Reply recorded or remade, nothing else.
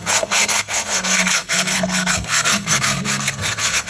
remade